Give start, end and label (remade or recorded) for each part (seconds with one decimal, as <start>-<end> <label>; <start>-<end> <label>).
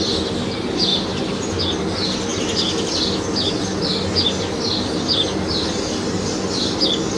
0.0-7.2 recorded